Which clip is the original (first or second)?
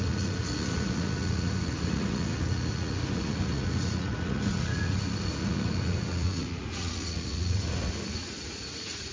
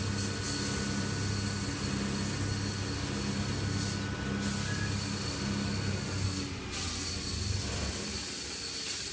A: second